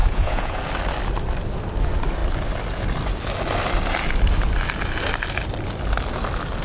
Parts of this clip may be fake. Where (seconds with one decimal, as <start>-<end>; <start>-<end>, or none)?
0.0-0.6